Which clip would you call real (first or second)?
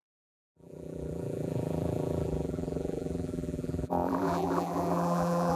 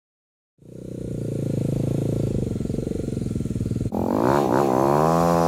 second